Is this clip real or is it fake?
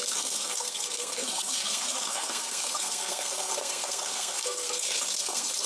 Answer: fake